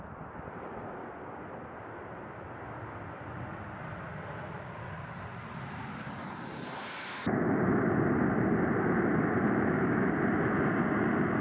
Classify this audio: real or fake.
real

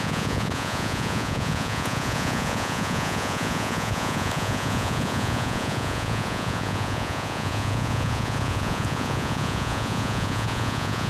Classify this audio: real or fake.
fake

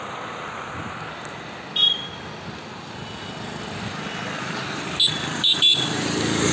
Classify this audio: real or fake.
real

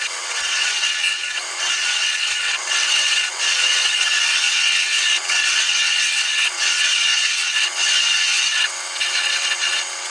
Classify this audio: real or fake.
fake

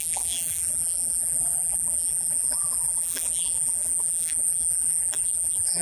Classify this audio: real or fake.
fake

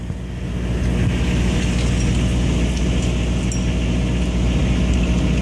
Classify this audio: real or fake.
real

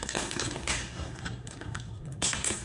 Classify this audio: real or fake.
fake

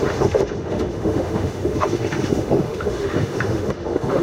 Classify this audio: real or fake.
fake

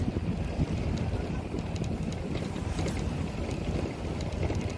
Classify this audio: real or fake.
real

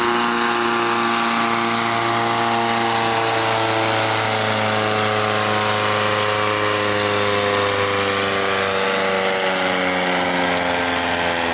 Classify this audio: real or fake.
real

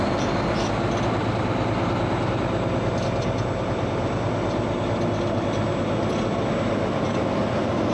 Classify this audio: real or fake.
real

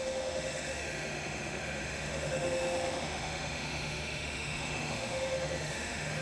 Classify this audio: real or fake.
fake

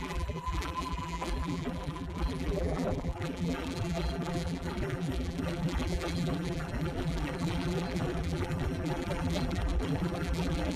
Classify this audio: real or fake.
fake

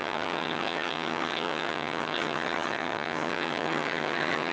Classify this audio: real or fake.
fake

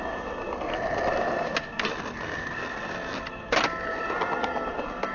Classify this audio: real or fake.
real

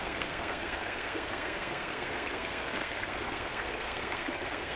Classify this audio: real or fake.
fake